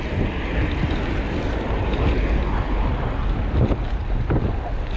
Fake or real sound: real